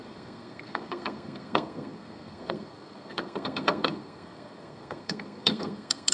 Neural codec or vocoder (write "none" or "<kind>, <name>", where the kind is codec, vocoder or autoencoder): codec, SNAC